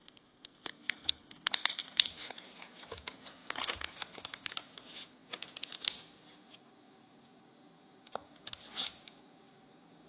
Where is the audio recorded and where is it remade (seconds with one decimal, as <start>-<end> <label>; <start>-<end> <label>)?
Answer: 0.0-2.1 remade; 2.1-10.1 recorded